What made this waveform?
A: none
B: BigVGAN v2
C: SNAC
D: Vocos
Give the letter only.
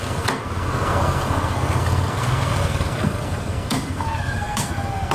C